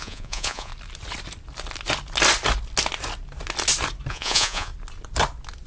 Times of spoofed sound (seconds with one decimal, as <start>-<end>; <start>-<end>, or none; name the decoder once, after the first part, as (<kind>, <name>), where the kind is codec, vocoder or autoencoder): 0.0-0.7 (vocoder, Vocos); 4.1-4.7